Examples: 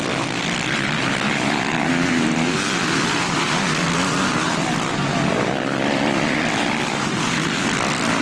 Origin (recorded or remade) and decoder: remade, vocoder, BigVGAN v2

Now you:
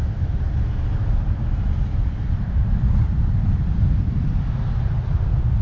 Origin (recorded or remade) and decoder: recorded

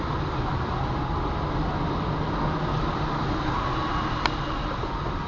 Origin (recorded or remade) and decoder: recorded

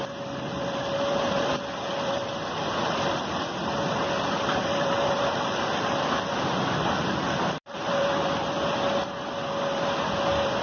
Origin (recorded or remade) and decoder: remade, vocoder, BigVGAN v2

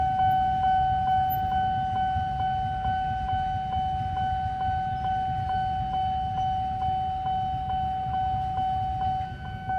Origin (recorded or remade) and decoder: recorded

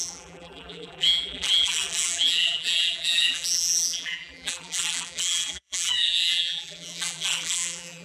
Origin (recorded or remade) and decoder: remade, vocoder, BigVGAN v2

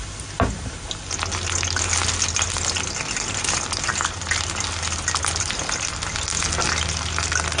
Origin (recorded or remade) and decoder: recorded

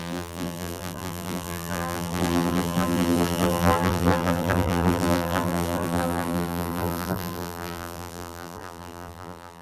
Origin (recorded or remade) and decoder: remade, vocoder, BigVGAN v2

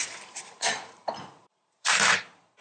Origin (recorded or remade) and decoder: remade, vocoder, BigVGAN v2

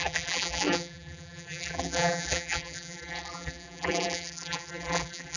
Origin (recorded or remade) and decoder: remade, vocoder, BigVGAN v2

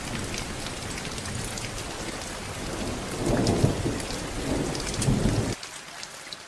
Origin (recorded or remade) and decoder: recorded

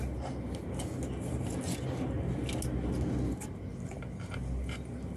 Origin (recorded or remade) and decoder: recorded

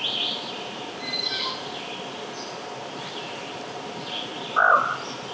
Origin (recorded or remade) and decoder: recorded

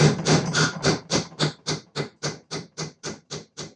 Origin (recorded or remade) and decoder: remade, vocoder, BigVGAN v2